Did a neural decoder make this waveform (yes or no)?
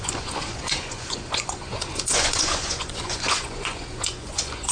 yes